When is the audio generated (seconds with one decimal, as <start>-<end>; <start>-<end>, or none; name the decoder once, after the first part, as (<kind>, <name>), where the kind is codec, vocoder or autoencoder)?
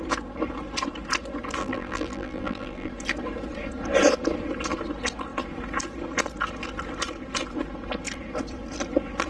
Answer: 1.6-2.9 (vocoder, BigVGAN v2)